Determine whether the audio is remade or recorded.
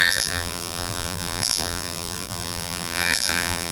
remade